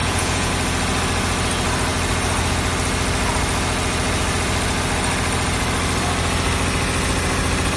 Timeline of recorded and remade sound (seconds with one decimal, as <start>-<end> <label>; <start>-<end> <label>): 0.0-0.5 remade; 0.5-7.8 recorded